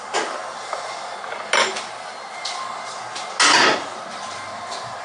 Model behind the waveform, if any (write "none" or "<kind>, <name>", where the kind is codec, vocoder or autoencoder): none